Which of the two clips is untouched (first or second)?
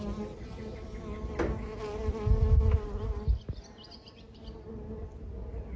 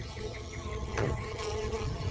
first